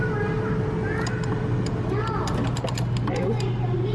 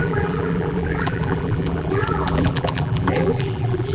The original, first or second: first